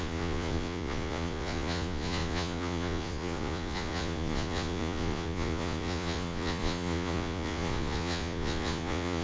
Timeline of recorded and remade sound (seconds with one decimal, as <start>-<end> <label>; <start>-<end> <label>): 0.0-9.2 remade

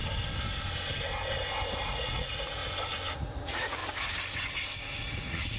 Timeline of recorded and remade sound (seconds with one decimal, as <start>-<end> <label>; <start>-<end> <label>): 0.0-1.9 recorded; 1.9-2.6 remade; 2.6-3.1 recorded; 3.1-3.8 remade; 3.8-4.8 recorded; 4.8-5.6 remade

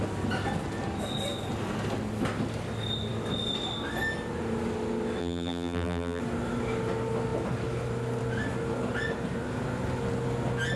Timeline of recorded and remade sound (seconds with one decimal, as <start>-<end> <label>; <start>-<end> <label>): 0.0-5.2 recorded; 5.2-6.2 remade; 6.2-10.8 recorded